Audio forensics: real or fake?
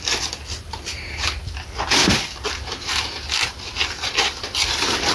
real